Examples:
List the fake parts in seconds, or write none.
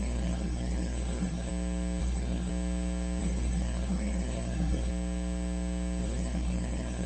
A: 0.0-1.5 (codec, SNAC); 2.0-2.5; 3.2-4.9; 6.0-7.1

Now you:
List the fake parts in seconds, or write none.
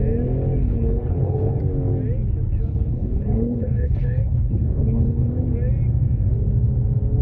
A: 0.6-1.6 (codec, HILCodec); 2.7-5.3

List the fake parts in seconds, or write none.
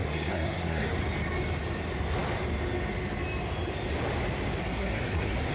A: 0.0-1.0 (codec, SNAC); 4.6-5.5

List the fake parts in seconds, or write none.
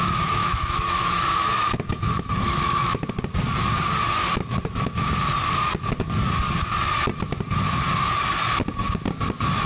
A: 0.4-3.1 (autoencoder, DAC-VAE)